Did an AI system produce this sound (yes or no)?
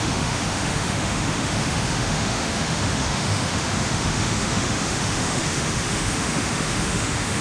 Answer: yes